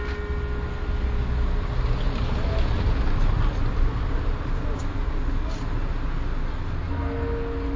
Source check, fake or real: real